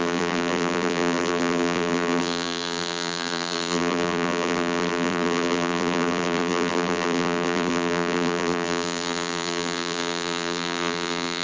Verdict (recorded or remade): remade